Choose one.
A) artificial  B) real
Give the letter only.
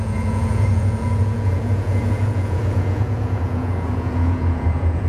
A